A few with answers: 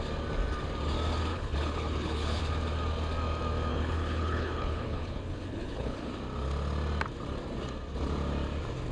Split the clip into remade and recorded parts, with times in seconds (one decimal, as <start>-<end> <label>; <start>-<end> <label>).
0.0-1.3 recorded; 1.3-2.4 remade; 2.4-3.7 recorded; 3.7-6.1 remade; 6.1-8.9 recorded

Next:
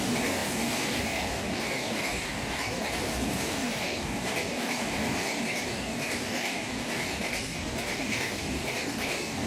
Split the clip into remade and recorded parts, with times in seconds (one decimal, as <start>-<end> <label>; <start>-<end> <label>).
0.0-9.5 remade

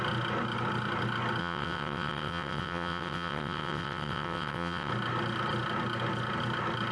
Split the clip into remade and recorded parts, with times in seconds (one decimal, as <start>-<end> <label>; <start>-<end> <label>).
0.0-1.4 recorded; 1.4-4.9 remade; 4.9-6.9 recorded